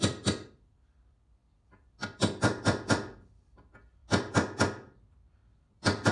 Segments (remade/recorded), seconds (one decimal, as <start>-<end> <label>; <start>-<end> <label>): 0.0-4.0 remade; 4.0-5.6 recorded; 5.6-6.1 remade